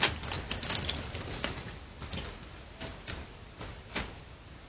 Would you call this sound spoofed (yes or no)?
yes